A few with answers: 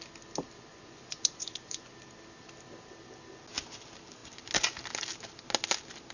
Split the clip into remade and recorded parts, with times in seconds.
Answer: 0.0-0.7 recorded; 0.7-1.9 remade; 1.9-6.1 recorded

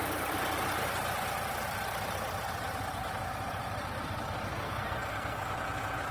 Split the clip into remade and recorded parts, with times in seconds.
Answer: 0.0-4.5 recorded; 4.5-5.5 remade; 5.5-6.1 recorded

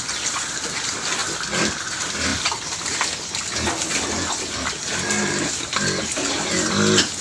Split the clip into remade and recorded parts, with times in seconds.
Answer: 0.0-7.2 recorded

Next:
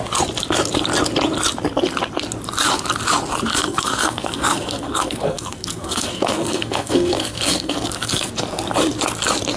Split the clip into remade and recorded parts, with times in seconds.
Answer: 0.0-3.5 recorded; 3.5-8.3 remade; 8.3-9.6 recorded

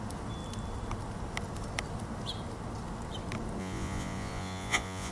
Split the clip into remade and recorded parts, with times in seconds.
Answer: 0.0-3.6 recorded; 3.6-5.1 remade

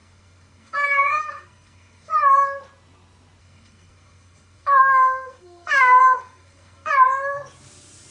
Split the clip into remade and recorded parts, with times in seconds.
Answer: 0.0-2.1 remade; 2.1-3.4 recorded; 3.4-6.9 remade; 6.9-8.1 recorded